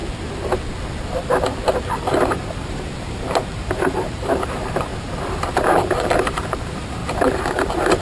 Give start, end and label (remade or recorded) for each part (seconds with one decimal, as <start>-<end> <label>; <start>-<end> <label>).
0.0-2.3 recorded; 2.3-4.9 remade; 4.9-5.5 recorded; 5.5-8.0 remade